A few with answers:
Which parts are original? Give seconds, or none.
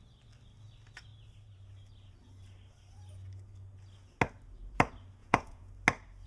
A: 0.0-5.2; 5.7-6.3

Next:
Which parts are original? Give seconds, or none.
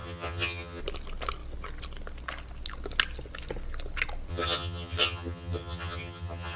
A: 0.8-4.3